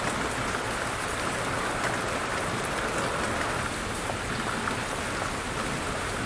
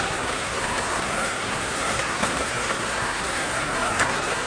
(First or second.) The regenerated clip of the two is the second